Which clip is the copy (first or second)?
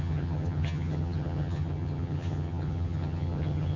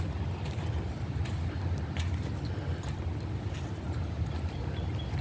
first